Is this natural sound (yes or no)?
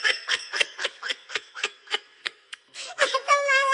no